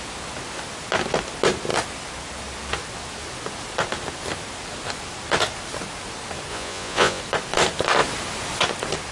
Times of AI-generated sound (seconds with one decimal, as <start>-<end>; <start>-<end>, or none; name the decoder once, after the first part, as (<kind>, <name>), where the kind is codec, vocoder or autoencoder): 6.5-7.2 (vocoder, Vocos)